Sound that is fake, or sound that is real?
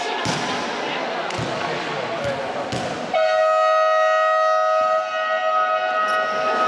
real